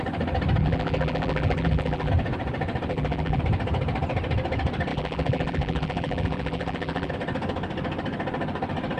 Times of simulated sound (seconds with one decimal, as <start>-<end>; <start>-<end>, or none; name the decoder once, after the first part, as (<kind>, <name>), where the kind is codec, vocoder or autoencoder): 0.6-2.1 (vocoder, BigVGAN v2); 2.9-3.4; 4.9-7.1